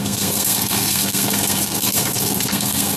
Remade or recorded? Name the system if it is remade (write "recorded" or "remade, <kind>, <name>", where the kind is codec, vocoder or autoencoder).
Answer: remade, codec, SNAC